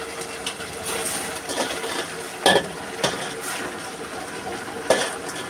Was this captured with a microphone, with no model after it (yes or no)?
yes